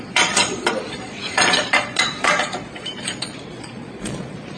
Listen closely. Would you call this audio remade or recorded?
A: remade